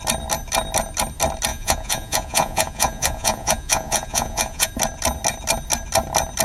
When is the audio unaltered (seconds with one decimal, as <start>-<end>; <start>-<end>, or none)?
0.0-1.5; 4.7-6.4